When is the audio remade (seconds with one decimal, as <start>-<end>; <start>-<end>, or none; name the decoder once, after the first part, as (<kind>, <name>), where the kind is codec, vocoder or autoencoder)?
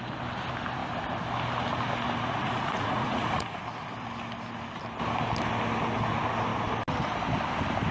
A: 2.4-3.6 (vocoder, Vocos)